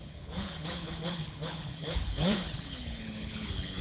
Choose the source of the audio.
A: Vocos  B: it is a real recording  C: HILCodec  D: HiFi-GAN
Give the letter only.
C